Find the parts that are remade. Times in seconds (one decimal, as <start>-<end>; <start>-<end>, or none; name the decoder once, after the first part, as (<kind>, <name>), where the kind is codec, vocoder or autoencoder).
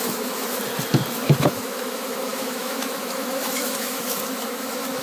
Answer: 0.0-0.6 (autoencoder, DAC-VAE); 1.4-5.0